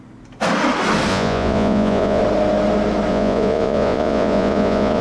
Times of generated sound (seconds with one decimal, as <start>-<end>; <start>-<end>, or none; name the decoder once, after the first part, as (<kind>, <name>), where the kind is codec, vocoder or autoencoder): 1.1-2.2 (vocoder, Vocos); 3.1-5.0

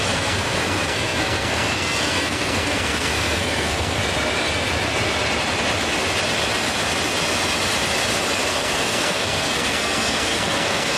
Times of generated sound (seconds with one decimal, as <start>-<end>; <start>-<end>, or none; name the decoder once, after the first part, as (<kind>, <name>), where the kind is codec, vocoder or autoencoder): 0.0-4.0 (codec, SNAC); 8.5-11.0

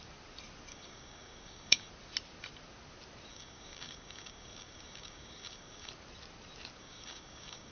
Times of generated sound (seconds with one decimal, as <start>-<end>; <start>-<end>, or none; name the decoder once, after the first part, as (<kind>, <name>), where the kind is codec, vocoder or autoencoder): 0.7-1.9 (codec, DAC); 3.3-5.9; 6.8-7.7

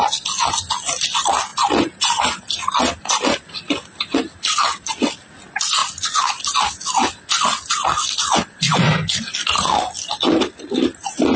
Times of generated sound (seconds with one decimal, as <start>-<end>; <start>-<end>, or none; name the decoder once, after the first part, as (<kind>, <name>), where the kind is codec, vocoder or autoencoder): none

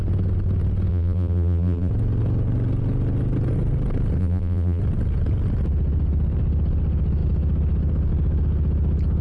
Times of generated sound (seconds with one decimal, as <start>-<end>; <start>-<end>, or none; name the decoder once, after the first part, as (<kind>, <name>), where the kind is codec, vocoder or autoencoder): 0.9-1.9 (vocoder, BigVGAN v2); 4.2-4.8

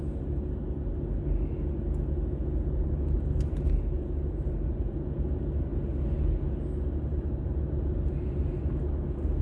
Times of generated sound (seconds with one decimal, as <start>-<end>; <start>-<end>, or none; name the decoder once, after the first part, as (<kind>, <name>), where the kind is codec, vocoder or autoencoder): 7.1-8.6 (vocoder, BigVGAN v2)

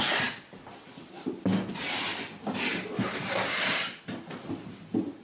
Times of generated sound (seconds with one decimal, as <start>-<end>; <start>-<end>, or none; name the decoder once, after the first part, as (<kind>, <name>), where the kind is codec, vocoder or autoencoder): none